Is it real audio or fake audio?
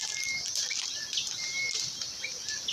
real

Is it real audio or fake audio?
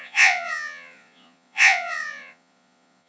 fake